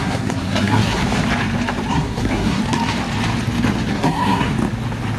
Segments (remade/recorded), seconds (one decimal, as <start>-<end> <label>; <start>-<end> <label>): 0.0-1.0 remade; 1.0-1.9 recorded; 1.9-2.6 remade; 2.6-3.9 recorded; 3.9-4.5 remade; 4.5-5.2 recorded